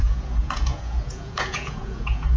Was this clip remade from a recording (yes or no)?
yes